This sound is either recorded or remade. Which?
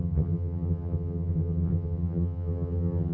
remade